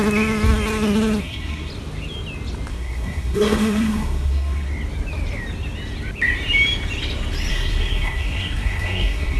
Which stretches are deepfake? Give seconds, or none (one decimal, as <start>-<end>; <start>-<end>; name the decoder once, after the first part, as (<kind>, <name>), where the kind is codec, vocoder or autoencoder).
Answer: 1.2-1.7 (codec, SNAC); 2.7-4.7; 7.5-9.4